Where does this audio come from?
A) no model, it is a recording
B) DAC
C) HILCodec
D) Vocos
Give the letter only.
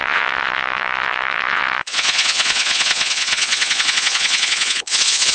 D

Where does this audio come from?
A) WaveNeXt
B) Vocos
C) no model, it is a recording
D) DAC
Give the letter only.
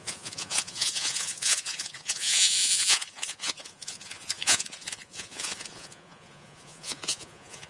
B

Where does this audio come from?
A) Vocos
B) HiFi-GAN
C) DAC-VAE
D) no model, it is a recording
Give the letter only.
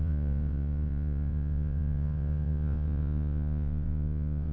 A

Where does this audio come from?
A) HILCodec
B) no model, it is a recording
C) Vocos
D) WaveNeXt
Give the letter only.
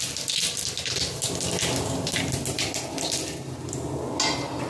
B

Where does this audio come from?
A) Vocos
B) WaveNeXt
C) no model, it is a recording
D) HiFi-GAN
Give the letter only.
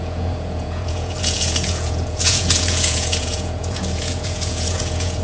A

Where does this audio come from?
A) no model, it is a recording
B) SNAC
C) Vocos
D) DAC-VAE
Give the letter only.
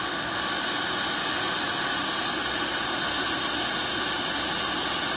A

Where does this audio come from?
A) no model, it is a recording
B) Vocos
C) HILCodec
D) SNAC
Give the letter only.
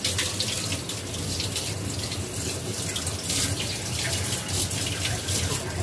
A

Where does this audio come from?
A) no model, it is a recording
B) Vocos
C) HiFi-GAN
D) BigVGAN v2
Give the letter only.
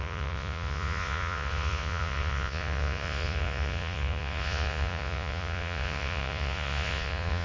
B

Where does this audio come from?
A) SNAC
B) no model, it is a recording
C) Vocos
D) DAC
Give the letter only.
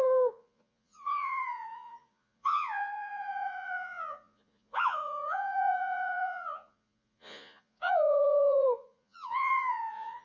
C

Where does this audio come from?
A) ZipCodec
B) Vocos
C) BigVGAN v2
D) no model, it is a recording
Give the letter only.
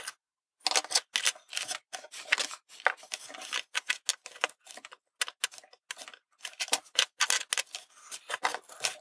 D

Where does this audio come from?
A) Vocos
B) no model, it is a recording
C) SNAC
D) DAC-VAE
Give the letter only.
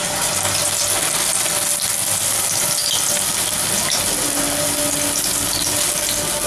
B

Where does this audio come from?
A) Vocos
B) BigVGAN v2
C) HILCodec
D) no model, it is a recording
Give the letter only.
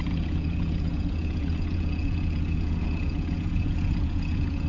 A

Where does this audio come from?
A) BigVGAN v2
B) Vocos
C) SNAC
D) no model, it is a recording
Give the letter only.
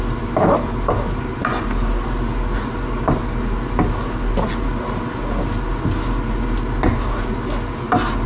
D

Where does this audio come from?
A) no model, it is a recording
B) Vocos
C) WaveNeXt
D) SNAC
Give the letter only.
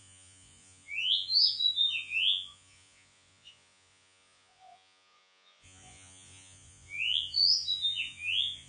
B